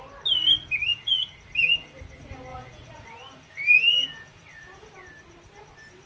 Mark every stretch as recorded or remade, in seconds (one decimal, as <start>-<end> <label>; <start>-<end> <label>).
0.0-0.9 recorded; 0.9-2.0 remade; 2.0-2.5 recorded; 2.5-4.9 remade; 4.9-6.1 recorded